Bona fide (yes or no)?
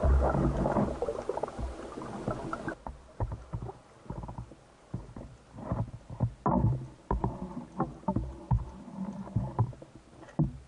yes